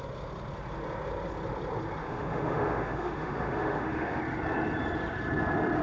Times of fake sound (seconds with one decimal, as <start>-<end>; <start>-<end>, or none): 2.0-4.2